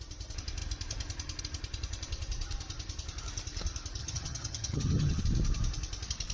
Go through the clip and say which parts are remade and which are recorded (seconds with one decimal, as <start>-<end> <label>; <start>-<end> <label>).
0.0-4.0 recorded; 4.0-5.2 remade; 5.2-6.3 recorded